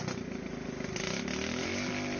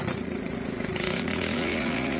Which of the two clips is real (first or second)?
first